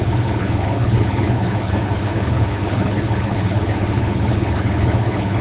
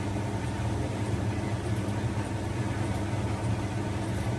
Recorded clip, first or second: second